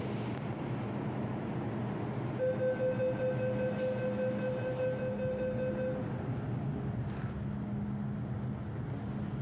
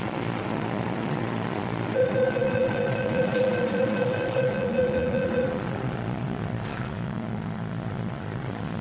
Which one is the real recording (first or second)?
first